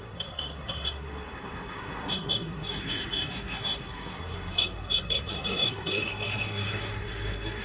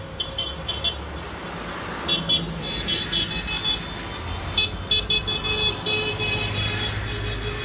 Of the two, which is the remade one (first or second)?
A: first